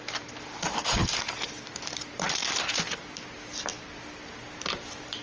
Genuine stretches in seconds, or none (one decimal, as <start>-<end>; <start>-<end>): 0.0-5.2